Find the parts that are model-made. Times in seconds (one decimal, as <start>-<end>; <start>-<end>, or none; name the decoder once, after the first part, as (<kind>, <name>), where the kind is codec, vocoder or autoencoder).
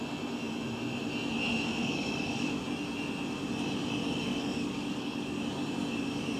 1.8-2.5 (codec, DAC); 4.0-5.4